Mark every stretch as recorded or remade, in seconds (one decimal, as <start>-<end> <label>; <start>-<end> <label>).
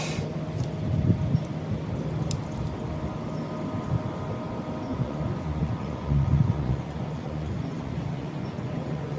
0.0-4.9 recorded; 4.9-9.2 remade